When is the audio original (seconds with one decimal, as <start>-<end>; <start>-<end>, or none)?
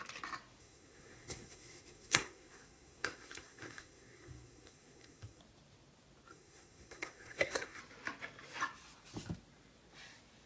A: 0.0-0.6; 5.4-6.3; 7.8-10.5